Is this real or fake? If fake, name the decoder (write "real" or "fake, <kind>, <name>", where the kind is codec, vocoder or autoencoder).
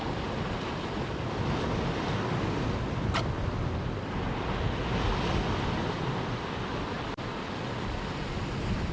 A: real